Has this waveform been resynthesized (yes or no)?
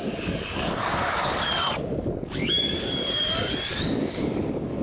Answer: yes